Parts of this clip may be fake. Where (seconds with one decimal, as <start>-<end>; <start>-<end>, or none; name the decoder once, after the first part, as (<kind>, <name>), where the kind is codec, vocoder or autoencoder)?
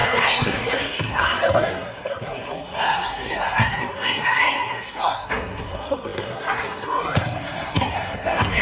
0.0-8.6 (codec, SNAC)